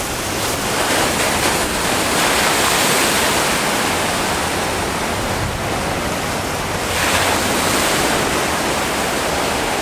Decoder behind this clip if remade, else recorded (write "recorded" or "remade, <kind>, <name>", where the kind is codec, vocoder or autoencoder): recorded